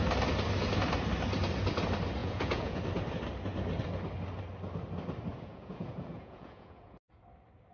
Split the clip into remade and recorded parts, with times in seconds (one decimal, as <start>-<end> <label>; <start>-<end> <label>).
0.0-2.2 recorded; 2.2-2.8 remade; 2.8-5.3 recorded; 5.3-7.1 remade; 7.1-7.7 recorded